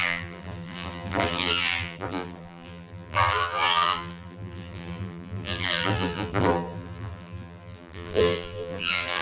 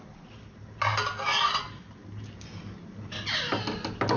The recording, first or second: second